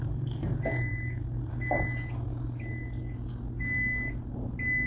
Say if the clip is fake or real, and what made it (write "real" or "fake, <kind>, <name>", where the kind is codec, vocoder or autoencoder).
real